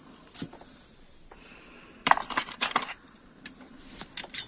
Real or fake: fake